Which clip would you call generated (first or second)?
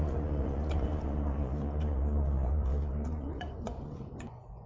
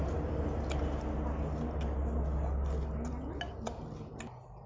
first